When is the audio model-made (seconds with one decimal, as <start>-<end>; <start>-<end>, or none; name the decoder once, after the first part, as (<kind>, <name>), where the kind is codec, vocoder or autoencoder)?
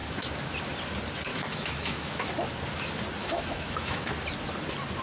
1.3-2.3 (autoencoder, DAC-VAE); 3.2-4.1